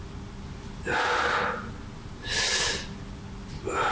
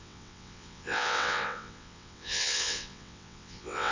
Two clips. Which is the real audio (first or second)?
first